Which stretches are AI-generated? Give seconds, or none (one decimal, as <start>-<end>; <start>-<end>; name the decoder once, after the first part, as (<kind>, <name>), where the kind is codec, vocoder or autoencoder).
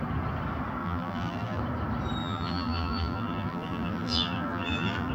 0.8-1.6 (vocoder, BigVGAN v2); 2.2-5.1